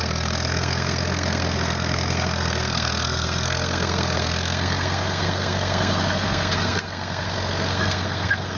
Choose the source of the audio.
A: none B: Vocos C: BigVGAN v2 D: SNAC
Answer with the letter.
D